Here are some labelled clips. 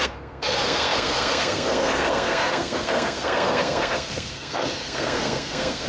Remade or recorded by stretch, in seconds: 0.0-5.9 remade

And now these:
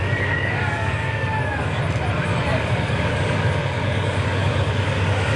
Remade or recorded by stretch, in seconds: 0.0-1.8 remade; 1.8-2.5 recorded; 2.5-5.4 remade